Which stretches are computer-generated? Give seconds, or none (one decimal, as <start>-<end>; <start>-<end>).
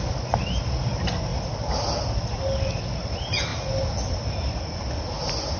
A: none